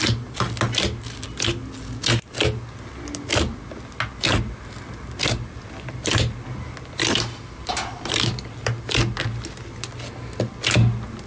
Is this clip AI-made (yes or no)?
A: no